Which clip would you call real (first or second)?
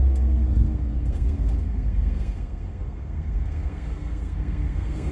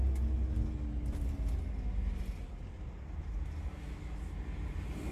second